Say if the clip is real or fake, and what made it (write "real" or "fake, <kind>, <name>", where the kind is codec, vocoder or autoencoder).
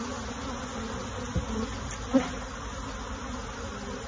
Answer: real